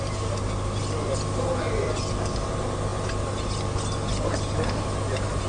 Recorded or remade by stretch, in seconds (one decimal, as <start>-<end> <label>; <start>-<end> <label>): 0.0-5.5 recorded

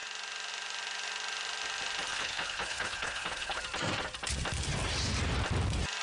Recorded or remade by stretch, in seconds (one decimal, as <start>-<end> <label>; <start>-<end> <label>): 0.0-2.1 recorded; 2.1-3.6 remade; 3.6-6.0 recorded

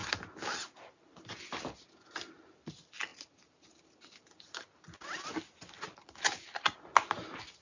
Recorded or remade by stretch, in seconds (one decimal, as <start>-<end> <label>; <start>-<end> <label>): 0.0-7.6 recorded

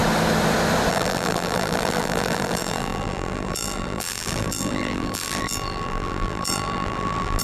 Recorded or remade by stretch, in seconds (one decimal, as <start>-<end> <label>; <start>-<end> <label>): 0.0-0.9 recorded; 0.9-7.4 remade

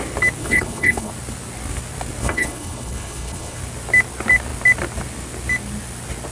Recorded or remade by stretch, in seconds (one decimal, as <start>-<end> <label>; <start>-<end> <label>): 0.0-0.4 recorded; 0.4-1.1 remade; 1.1-2.2 recorded; 2.2-3.6 remade; 3.6-6.3 recorded

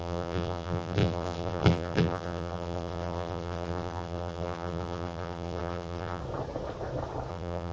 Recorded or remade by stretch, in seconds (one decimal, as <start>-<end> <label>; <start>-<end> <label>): 0.0-6.2 remade; 6.2-7.3 recorded; 7.3-7.7 remade

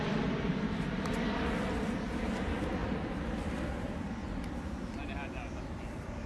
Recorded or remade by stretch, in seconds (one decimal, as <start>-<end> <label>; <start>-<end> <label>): 0.0-6.3 recorded

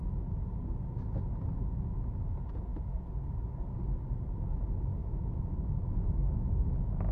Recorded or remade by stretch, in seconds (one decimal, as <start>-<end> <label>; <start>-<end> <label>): 0.0-5.0 recorded; 5.0-6.5 remade; 6.5-7.1 recorded